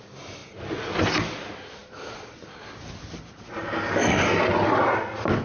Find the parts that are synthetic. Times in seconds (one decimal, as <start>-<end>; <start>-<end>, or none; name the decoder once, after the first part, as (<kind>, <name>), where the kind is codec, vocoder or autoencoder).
none